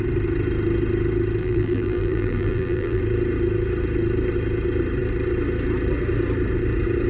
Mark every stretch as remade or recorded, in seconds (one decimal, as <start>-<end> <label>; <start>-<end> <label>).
0.0-1.4 recorded; 1.4-3.0 remade; 3.0-7.1 recorded